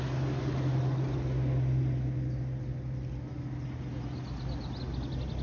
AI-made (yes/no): no